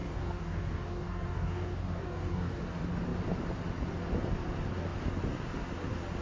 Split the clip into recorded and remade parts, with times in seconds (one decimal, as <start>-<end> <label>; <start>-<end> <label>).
0.0-2.6 remade; 2.6-6.2 recorded